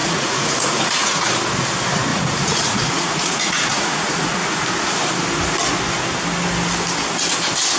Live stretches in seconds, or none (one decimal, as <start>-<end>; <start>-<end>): 1.3-2.1; 4.6-7.8